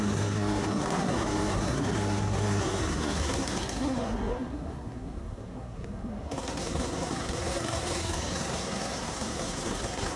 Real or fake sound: fake